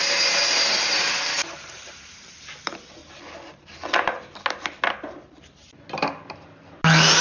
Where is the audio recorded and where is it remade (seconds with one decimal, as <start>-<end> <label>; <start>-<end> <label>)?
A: 0.0-3.0 remade; 3.0-7.2 recorded